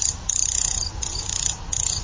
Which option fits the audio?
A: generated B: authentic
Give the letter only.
B